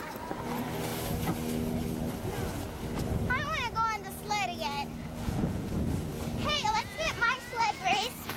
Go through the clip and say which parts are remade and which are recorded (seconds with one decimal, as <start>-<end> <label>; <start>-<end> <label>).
0.0-5.0 recorded; 5.0-5.7 remade; 5.7-6.4 recorded; 6.4-8.4 remade